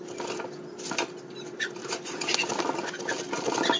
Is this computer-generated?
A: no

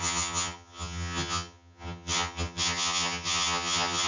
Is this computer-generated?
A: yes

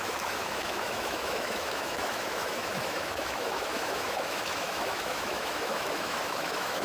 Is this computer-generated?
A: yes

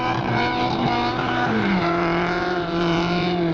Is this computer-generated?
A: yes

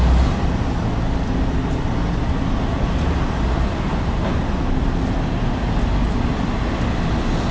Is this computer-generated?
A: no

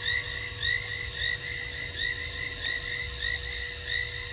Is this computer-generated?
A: no